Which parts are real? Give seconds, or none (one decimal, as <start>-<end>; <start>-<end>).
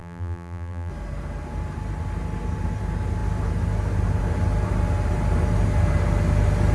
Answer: 0.9-6.7